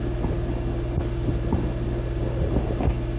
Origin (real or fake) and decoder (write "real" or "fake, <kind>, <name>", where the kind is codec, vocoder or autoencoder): real